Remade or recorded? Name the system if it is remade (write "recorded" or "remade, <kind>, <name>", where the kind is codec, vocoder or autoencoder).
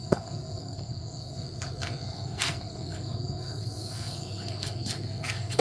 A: remade, codec, SNAC